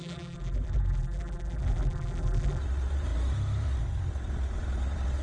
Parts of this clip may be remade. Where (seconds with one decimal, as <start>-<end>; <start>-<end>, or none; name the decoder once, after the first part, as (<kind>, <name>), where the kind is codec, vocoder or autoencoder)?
0.0-2.6 (vocoder, BigVGAN v2)